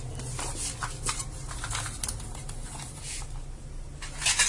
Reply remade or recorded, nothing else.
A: recorded